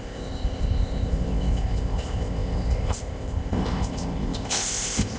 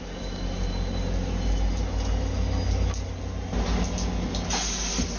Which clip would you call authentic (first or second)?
second